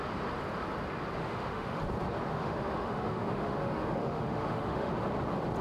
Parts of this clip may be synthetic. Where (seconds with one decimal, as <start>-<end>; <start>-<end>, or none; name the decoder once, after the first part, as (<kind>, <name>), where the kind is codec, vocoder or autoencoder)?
1.2-1.8 (autoencoder, DAC-VAE); 2.3-4.9